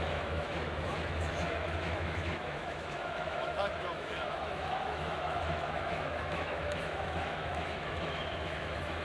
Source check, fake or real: fake